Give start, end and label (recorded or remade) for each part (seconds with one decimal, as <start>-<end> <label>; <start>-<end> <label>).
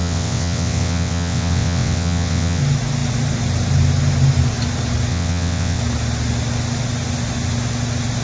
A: 0.0-2.6 remade; 2.6-5.1 recorded; 5.1-5.8 remade; 5.8-8.2 recorded